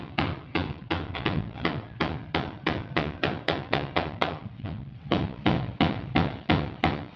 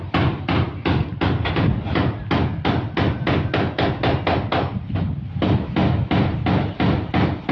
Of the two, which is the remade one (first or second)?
first